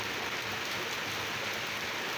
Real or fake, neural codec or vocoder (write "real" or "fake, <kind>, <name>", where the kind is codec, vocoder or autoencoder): real